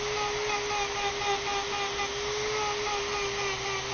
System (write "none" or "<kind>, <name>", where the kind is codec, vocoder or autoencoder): none